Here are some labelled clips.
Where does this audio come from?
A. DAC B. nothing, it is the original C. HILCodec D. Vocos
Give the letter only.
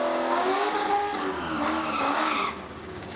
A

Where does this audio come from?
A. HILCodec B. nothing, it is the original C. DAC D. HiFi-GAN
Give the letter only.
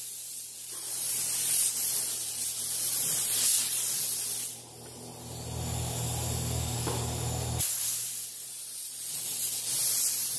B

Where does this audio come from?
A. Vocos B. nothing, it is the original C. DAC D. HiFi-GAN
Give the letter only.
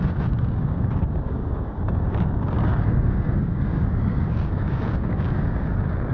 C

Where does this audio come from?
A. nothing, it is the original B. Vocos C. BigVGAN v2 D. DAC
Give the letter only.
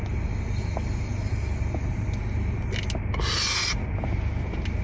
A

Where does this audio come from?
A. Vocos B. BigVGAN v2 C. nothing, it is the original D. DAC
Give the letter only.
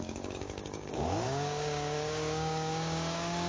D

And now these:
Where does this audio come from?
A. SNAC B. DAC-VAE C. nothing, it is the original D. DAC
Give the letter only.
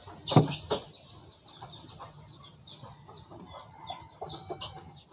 C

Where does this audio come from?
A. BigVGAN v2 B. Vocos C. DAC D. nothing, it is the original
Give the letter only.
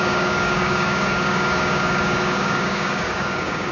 C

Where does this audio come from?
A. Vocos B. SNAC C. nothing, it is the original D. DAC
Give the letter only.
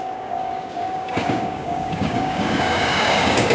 D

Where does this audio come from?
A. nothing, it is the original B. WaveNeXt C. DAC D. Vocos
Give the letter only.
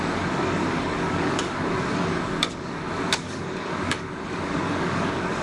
C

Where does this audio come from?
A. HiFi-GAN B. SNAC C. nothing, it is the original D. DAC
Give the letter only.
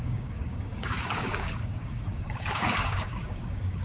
D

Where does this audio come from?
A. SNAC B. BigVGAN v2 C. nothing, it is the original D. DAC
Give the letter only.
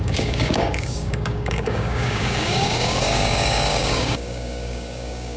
D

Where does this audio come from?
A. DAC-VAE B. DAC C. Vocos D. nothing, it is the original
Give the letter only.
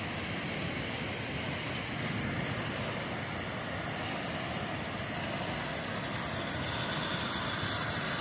D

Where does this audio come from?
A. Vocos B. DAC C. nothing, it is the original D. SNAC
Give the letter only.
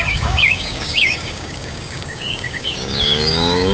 B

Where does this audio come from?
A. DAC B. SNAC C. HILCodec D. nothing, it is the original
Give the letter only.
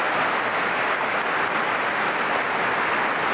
D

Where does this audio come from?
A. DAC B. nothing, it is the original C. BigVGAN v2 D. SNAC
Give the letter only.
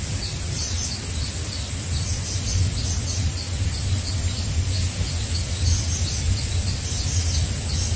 B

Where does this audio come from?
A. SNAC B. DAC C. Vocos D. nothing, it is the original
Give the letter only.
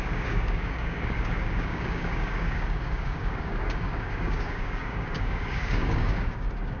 B